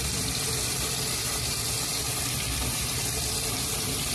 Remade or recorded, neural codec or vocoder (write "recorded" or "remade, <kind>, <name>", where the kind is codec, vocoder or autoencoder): remade, vocoder, BigVGAN v2